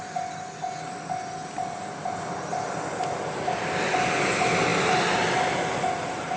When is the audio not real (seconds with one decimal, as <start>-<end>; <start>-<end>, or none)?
none